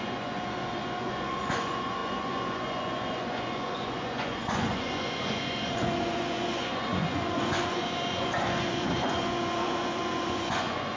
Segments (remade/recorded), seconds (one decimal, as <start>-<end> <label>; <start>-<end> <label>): 0.0-11.0 remade